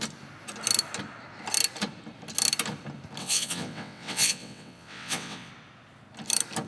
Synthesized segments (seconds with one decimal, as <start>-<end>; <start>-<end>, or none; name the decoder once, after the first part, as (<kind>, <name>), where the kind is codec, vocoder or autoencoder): 3.2-5.5 (vocoder, WaveNeXt)